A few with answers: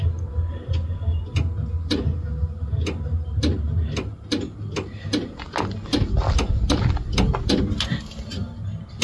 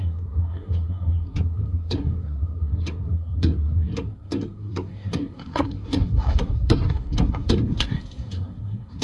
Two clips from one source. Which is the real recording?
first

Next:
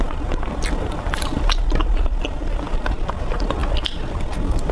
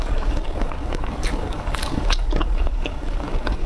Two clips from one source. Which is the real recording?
first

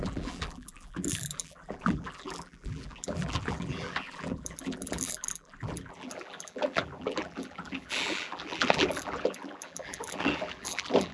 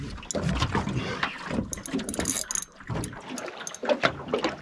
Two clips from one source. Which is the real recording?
second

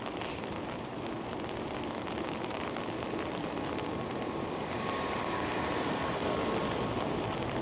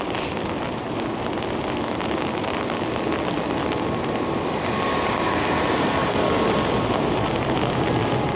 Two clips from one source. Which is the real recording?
second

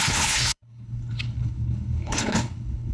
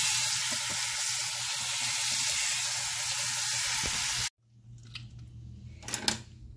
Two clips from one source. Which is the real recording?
second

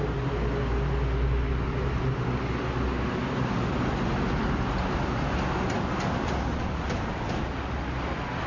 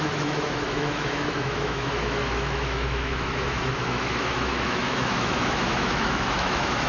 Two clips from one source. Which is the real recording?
first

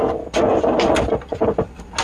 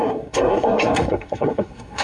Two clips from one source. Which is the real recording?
first